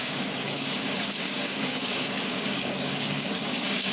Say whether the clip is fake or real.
fake